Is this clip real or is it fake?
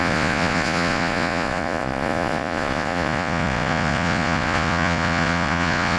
fake